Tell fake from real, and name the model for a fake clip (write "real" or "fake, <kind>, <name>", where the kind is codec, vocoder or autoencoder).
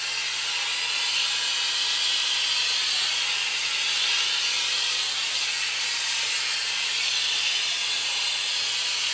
real